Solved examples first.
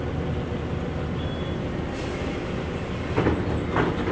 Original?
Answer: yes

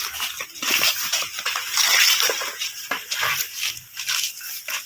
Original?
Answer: yes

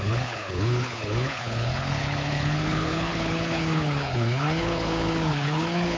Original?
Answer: no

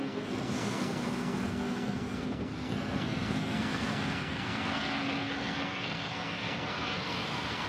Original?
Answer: no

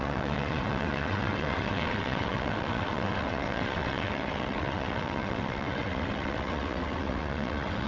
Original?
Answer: no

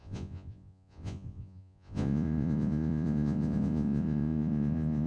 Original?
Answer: no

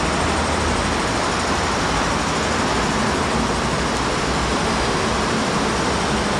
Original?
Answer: yes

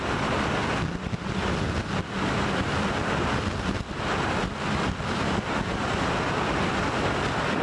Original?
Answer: yes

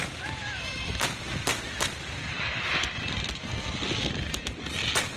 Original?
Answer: yes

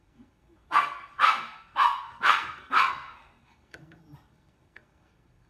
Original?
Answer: no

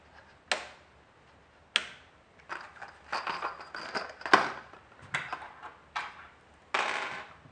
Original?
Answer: yes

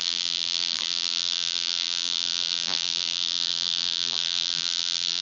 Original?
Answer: no